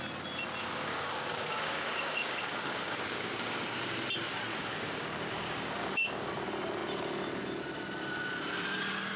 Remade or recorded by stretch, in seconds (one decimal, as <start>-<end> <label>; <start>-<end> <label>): 0.0-0.6 recorded; 0.6-3.6 remade; 3.6-4.5 recorded; 4.5-6.3 remade; 6.3-9.2 recorded